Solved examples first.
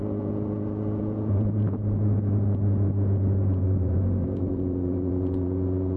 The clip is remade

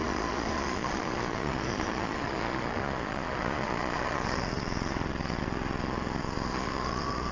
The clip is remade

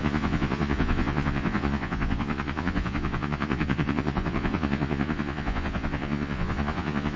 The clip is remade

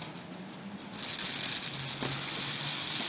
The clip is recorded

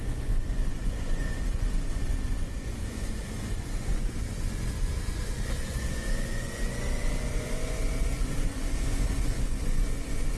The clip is remade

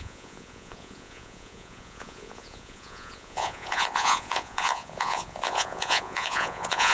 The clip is remade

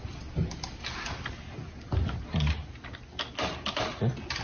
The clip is recorded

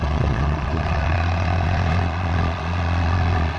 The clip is remade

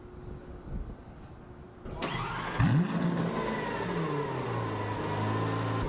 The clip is recorded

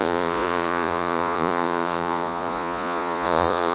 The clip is remade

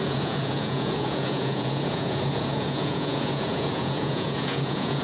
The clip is remade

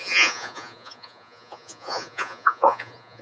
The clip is remade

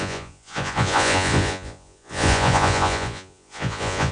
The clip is remade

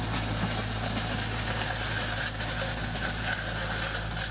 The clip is recorded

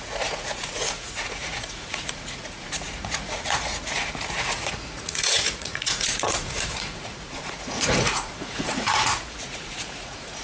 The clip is remade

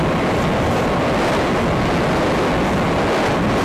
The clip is recorded